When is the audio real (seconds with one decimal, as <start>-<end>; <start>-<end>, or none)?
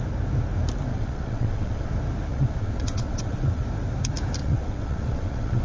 0.0-0.9; 1.9-2.3; 3.6-4.4